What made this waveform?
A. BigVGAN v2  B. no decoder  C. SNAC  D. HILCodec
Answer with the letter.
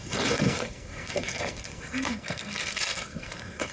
C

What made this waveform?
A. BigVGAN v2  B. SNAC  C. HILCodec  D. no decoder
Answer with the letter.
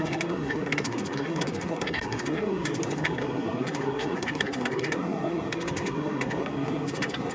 B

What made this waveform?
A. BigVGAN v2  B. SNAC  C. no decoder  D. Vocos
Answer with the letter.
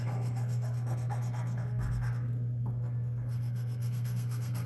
B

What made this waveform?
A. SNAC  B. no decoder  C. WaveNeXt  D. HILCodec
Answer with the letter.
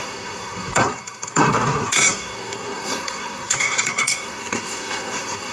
A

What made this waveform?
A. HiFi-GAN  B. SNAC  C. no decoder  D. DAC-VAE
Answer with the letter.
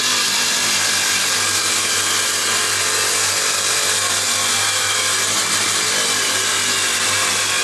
C